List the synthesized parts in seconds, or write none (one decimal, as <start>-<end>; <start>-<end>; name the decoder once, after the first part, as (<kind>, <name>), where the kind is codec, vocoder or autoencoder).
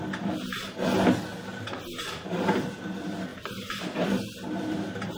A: 1.5-2.0 (vocoder, BigVGAN v2); 3.3-4.1